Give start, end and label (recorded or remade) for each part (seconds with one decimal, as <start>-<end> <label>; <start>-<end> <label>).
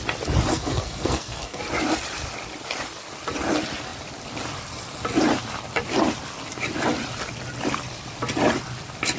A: 0.0-0.5 recorded; 0.5-1.6 remade; 1.6-9.2 recorded